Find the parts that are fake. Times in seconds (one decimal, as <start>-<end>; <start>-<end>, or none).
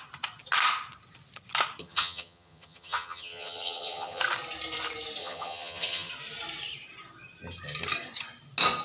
1.8-4.2; 5.2-6.1